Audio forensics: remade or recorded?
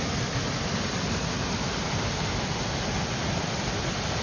recorded